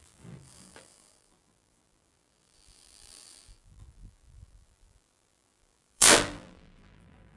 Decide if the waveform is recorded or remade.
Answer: remade